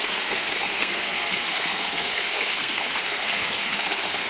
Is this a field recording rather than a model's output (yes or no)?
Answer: no